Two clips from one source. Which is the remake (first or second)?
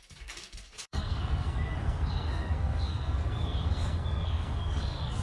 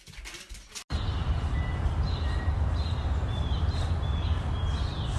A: first